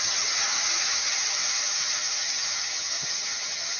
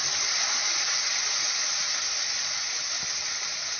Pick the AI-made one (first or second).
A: first